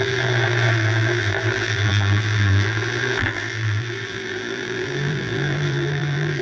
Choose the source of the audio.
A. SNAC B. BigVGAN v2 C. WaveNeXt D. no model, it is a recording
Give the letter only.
B